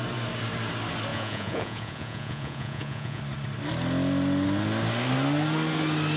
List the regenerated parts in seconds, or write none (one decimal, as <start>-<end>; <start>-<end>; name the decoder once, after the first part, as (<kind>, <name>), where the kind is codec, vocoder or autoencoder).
1.1-3.2 (vocoder, Vocos)